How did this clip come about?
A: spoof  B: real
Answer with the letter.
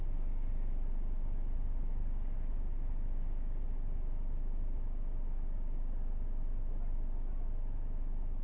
B